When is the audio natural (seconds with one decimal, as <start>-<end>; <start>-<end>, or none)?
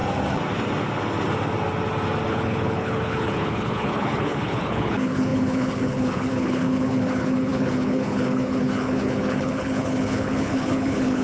0.0-2.3